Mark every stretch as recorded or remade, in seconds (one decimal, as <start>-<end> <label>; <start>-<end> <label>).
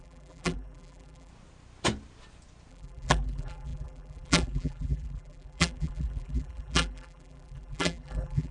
0.0-1.3 remade; 1.3-2.7 recorded; 2.7-8.5 remade